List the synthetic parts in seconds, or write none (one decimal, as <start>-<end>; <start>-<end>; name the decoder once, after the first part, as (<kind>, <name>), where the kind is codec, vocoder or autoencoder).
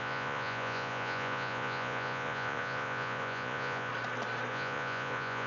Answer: 0.0-3.9 (vocoder, Vocos); 4.5-5.5